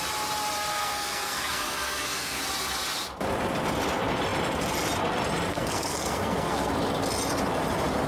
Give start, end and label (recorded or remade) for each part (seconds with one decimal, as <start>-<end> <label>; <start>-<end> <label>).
0.0-0.7 recorded; 0.7-2.4 remade; 2.4-5.5 recorded; 5.5-6.7 remade; 6.7-8.1 recorded